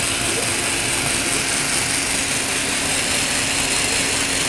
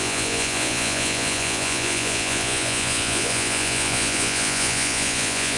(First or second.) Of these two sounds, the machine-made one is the second